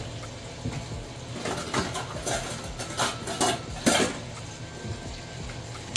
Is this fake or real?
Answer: real